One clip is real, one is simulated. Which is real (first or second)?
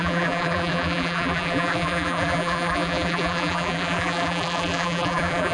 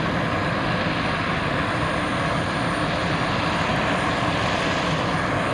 second